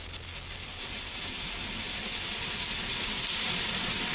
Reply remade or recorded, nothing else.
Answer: recorded